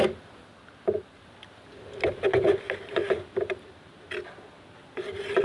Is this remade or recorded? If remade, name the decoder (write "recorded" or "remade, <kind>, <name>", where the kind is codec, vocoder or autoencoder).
recorded